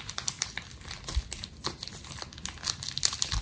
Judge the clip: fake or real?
real